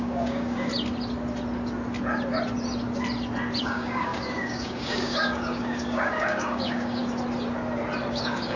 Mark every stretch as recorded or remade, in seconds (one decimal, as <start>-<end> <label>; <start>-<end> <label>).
0.0-0.7 remade; 0.7-3.6 recorded; 3.6-7.0 remade; 7.0-8.1 recorded; 8.1-8.6 remade